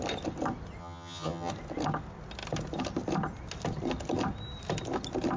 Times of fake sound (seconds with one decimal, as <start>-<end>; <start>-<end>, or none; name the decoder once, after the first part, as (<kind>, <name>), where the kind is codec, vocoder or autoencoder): 0.8-1.5 (vocoder, HiFi-GAN)